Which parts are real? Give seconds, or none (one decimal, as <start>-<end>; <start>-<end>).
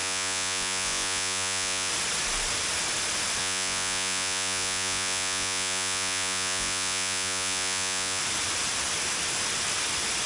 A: 1.9-3.4; 8.2-10.3